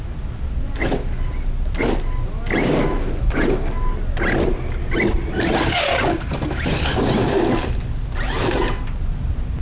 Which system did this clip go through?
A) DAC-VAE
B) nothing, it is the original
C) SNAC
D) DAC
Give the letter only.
B